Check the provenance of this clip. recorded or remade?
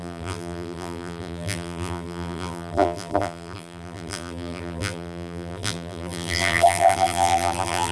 remade